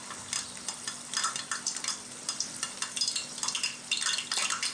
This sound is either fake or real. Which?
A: real